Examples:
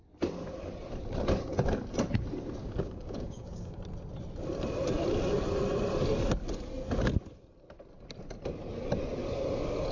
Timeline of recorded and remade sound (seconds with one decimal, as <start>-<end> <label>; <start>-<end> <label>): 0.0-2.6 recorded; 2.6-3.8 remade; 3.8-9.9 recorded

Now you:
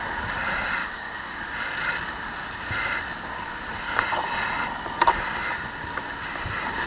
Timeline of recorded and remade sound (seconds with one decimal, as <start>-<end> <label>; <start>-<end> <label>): 0.0-0.8 recorded; 0.8-1.4 remade; 1.4-6.9 recorded

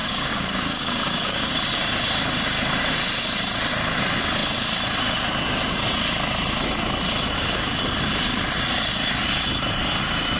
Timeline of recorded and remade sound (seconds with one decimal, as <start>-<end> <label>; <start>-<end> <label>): 0.0-1.5 remade; 1.5-10.4 recorded

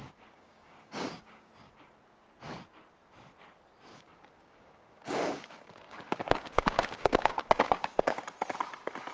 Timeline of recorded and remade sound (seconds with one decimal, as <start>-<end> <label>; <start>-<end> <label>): 0.0-1.5 remade; 1.5-3.9 recorded; 3.9-8.2 remade; 8.2-9.1 recorded

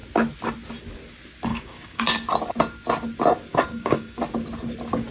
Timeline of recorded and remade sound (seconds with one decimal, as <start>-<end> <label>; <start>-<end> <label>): 0.0-1.5 recorded; 1.5-2.0 remade; 2.0-3.5 recorded; 3.5-4.2 remade; 4.2-5.1 recorded

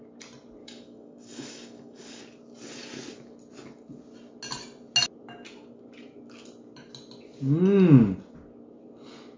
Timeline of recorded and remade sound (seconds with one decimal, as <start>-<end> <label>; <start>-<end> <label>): 0.0-0.6 recorded; 0.6-2.2 remade; 2.2-9.4 recorded

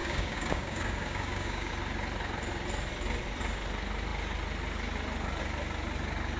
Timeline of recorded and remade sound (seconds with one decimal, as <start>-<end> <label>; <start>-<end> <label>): 0.0-1.7 remade; 1.7-6.4 recorded